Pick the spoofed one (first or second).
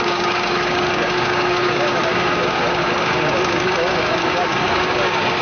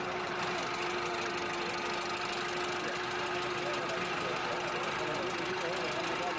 first